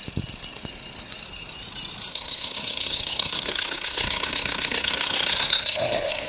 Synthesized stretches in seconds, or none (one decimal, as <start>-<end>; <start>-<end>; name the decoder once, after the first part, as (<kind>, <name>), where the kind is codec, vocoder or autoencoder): 2.1-6.3 (codec, SNAC)